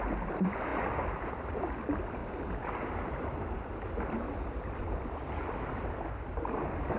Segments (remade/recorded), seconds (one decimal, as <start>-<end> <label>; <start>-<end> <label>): 0.0-7.0 recorded